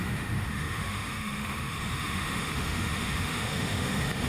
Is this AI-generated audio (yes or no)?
yes